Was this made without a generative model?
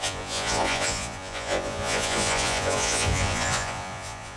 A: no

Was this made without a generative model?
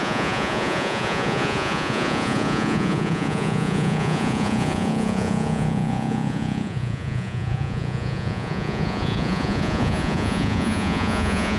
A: no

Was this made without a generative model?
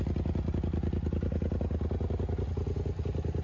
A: yes